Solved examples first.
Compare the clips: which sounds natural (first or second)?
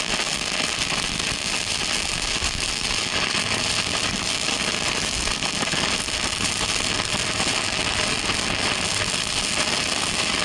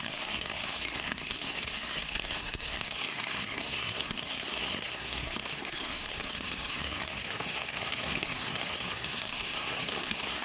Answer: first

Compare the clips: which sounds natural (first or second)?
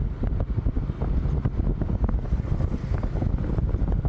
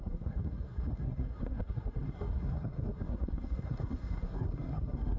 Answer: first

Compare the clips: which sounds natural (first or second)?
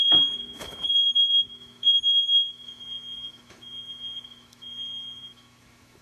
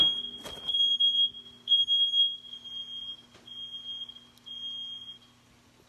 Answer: second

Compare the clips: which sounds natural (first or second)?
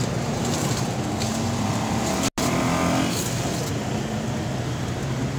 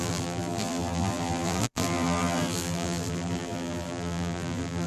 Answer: first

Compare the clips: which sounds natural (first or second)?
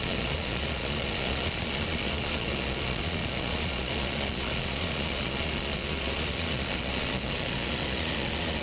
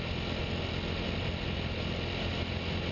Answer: second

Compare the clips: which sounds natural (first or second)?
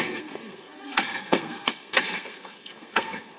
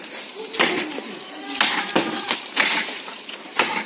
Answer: second